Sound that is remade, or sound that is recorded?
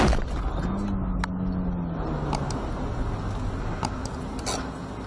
recorded